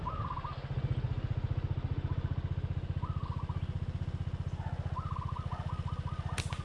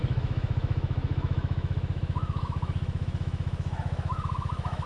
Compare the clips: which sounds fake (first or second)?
second